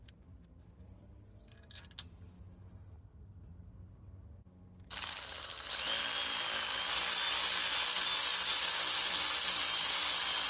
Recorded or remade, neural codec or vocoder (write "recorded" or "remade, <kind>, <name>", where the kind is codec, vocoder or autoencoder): recorded